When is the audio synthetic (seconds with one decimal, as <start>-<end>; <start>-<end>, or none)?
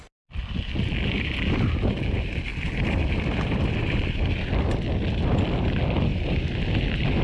2.5-3.1; 6.1-6.7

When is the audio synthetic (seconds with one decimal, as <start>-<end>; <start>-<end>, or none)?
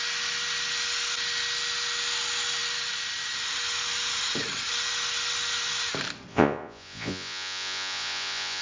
6.3-8.6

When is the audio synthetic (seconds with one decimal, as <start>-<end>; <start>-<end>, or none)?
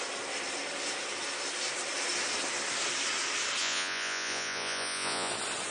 3.6-5.3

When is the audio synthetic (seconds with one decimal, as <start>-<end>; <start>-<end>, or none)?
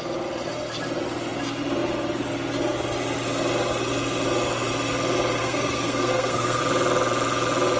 5.4-6.6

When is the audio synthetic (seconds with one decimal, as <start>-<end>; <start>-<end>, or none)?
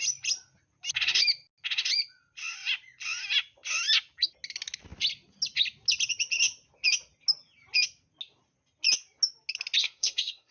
9.8-10.5